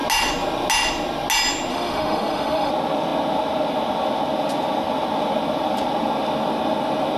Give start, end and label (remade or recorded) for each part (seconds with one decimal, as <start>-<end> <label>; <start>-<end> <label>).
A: 0.0-1.7 recorded; 1.7-2.7 remade; 2.7-7.2 recorded